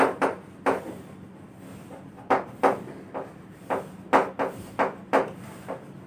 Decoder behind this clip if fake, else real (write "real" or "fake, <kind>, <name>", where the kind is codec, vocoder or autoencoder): real